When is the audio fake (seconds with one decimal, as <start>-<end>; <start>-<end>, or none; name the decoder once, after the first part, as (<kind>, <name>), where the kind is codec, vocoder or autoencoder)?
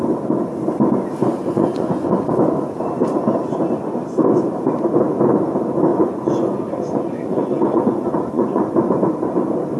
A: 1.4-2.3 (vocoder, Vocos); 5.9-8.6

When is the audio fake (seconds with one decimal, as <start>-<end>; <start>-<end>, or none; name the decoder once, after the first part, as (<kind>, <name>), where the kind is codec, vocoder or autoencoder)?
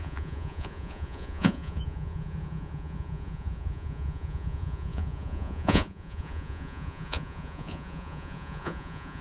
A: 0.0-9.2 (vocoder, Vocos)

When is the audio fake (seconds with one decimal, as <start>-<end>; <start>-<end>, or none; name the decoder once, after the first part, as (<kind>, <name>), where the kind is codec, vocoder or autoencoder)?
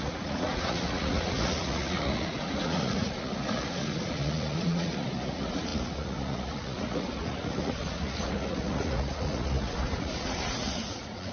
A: 0.0-11.3 (vocoder, Vocos)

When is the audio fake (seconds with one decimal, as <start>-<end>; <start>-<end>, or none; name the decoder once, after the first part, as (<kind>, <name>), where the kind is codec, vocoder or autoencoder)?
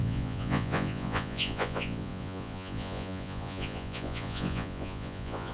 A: 0.0-5.5 (vocoder, Vocos)